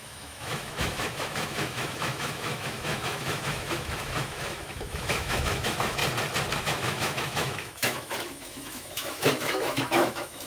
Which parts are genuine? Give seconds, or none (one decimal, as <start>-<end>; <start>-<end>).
6.0-6.6